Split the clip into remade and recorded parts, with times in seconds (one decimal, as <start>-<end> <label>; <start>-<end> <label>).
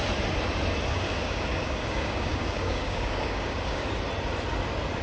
0.0-0.9 recorded; 0.9-3.9 remade; 3.9-5.0 recorded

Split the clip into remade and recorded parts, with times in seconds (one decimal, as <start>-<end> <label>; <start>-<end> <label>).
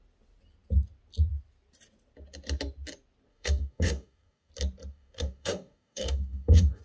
0.0-3.3 recorded; 3.3-4.5 remade; 4.5-4.9 recorded; 4.9-6.8 remade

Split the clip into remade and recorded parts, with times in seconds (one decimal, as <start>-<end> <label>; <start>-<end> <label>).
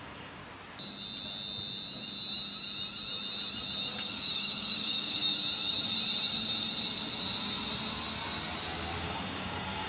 0.0-0.4 remade; 0.4-3.9 recorded; 3.9-5.3 remade; 5.3-9.0 recorded; 9.0-9.9 remade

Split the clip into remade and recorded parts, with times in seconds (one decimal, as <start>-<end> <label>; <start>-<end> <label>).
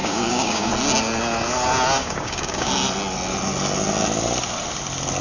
0.0-0.7 remade; 0.7-2.0 recorded; 2.0-2.7 remade; 2.7-5.2 recorded